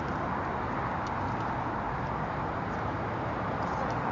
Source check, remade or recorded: recorded